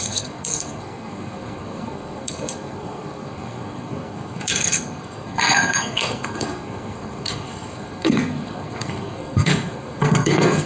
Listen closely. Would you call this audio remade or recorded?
remade